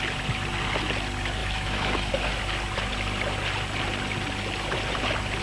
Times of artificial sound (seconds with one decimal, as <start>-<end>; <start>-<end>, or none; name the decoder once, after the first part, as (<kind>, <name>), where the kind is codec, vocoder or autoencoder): 1.4-2.1 (autoencoder, DAC-VAE)